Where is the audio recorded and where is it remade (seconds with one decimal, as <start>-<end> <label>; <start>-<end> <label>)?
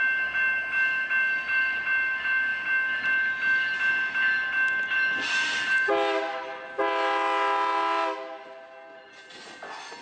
0.0-10.0 recorded